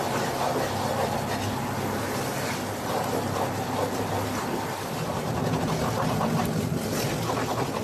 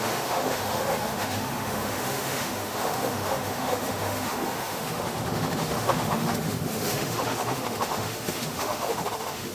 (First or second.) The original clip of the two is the first